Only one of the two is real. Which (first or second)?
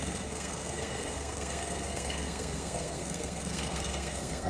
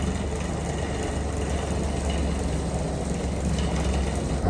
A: second